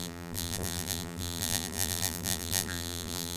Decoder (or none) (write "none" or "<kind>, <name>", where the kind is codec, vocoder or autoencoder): vocoder, BigVGAN v2